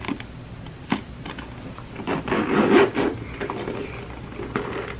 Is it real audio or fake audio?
fake